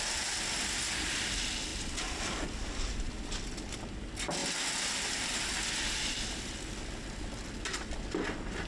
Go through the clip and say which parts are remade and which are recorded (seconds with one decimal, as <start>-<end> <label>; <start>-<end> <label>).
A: 0.0-8.7 recorded